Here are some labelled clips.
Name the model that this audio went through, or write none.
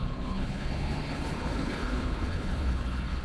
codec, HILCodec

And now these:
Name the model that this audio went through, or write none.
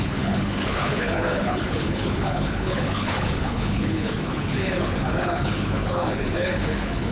codec, HILCodec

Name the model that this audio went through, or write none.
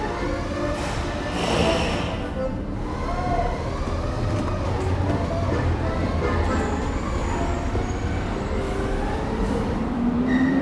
none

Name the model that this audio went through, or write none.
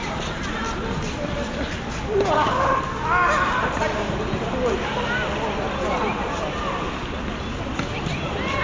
none